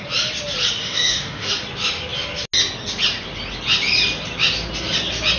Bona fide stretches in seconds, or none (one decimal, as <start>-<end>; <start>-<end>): 0.0-0.8; 1.5-5.4